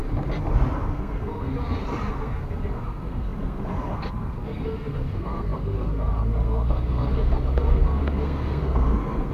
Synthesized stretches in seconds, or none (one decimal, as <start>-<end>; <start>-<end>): 0.8-1.5; 2.1-9.3